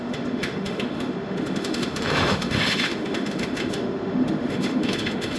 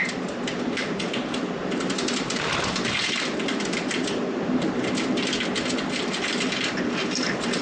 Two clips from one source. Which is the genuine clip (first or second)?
second